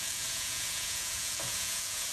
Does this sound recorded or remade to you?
remade